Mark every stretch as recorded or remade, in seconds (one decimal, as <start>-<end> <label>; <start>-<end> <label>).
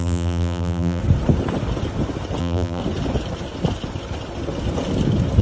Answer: 0.0-1.0 remade; 1.0-2.4 recorded; 2.4-2.8 remade; 2.8-5.4 recorded